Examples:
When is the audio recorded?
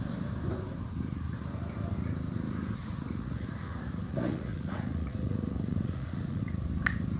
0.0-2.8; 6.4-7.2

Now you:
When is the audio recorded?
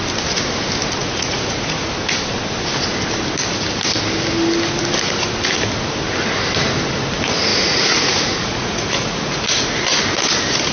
0.0-1.0; 1.9-7.5; 10.0-10.7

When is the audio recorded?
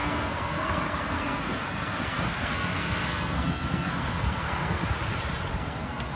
4.8-5.5